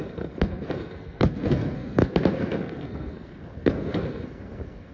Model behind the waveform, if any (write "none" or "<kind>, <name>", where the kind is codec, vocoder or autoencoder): codec, SNAC